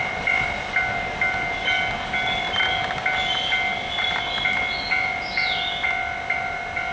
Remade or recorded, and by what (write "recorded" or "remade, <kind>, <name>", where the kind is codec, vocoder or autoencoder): recorded